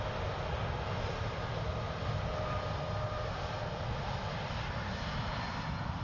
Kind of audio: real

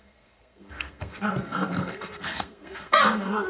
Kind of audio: fake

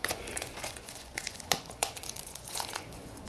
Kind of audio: fake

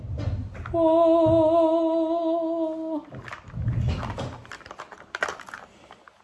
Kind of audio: real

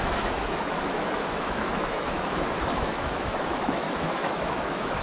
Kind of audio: fake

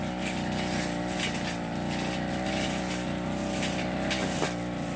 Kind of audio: real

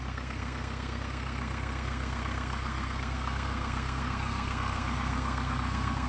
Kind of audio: fake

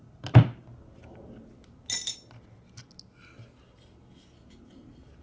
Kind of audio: real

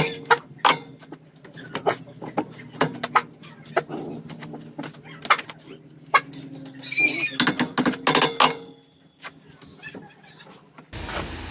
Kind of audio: real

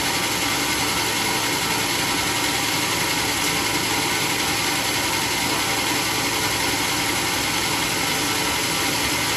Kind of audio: real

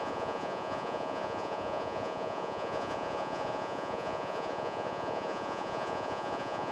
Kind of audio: fake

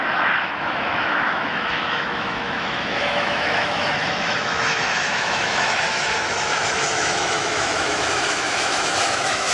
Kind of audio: fake